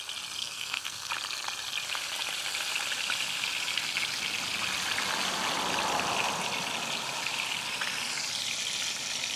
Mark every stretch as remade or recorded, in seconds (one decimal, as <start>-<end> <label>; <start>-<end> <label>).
0.0-0.4 recorded; 0.4-1.1 remade; 1.1-9.4 recorded